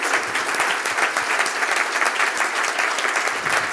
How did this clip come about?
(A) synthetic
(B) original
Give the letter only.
B